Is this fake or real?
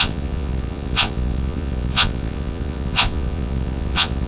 fake